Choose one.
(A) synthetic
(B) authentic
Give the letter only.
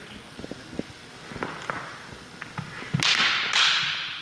B